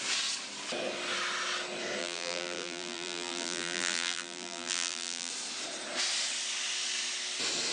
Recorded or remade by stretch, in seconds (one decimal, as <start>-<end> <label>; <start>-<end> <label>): 0.0-2.0 recorded; 2.0-5.3 remade; 5.3-7.7 recorded